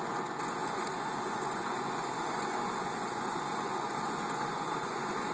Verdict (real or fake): fake